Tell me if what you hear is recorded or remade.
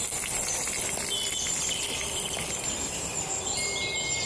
recorded